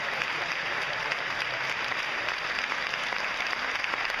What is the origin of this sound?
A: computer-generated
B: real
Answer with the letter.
A